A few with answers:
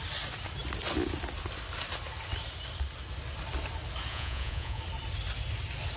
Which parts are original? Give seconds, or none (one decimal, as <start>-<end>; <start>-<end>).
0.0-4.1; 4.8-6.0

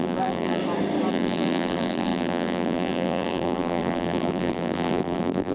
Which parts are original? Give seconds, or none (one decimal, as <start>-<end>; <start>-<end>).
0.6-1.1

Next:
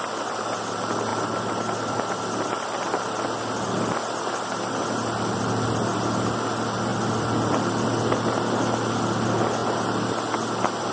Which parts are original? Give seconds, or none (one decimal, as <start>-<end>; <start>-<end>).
0.0-10.9

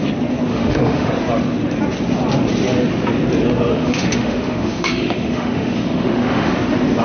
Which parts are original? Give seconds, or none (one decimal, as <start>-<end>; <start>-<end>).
0.0-0.5; 1.1-3.7; 6.5-7.0

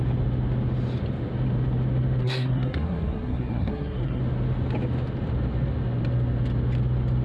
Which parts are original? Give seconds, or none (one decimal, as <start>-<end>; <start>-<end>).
0.0-2.2; 4.2-7.2

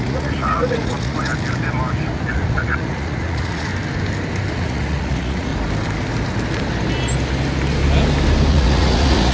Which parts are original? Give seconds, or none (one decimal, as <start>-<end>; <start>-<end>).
1.3-2.3; 3.7-4.5; 5.5-8.5